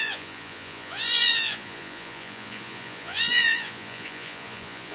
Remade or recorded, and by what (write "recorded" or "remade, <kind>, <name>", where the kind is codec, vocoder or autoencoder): remade, vocoder, Vocos